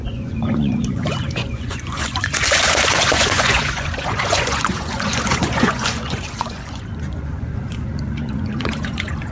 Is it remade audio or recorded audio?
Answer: remade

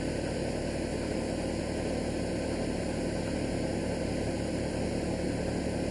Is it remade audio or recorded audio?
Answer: recorded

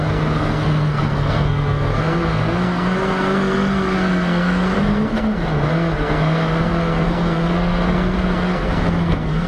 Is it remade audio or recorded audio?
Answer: remade